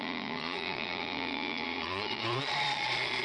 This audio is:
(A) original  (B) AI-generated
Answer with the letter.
B